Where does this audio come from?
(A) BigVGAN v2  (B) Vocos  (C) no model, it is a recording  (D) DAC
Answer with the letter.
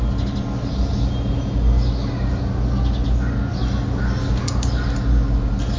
C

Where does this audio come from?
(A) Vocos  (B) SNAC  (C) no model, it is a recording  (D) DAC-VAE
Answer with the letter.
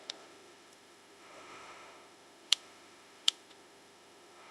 D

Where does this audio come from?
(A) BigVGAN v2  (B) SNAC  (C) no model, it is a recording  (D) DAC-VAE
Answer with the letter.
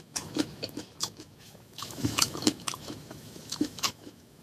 D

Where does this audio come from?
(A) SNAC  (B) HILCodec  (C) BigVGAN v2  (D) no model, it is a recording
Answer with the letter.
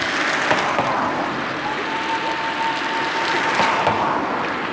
D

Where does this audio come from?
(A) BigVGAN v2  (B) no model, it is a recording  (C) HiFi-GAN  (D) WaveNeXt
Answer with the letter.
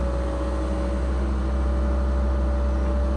B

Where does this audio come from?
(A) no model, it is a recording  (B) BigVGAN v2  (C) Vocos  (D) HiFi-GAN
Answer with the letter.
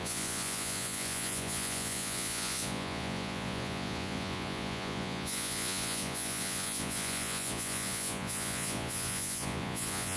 C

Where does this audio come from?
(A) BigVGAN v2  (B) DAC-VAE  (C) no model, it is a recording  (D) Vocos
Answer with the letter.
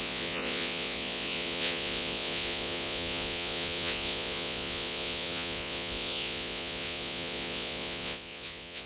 D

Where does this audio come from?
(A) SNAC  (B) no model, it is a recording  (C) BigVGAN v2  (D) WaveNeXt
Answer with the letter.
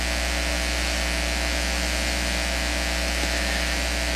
B